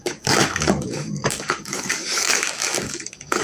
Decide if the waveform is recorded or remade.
remade